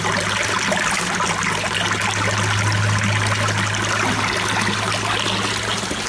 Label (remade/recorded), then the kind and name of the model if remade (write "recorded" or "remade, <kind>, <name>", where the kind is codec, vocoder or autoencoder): recorded